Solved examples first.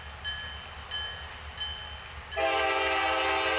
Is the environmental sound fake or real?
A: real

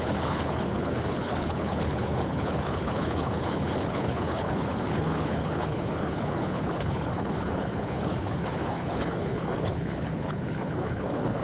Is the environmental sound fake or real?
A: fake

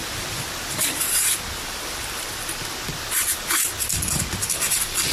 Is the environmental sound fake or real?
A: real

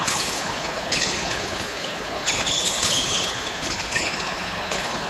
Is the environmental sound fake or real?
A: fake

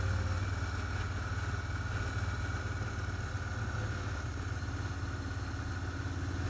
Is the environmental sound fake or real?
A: real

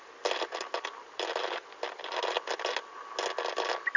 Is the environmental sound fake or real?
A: real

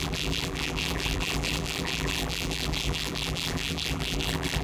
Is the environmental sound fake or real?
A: fake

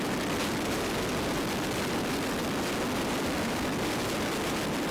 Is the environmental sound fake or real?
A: real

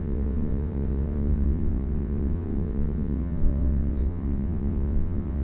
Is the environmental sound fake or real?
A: fake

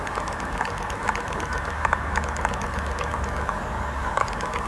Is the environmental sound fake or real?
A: fake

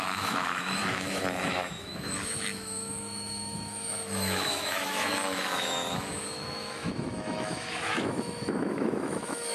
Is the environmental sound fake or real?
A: fake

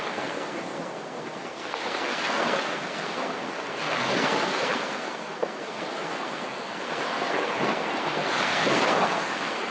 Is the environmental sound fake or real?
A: fake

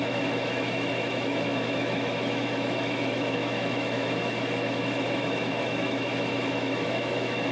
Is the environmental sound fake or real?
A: fake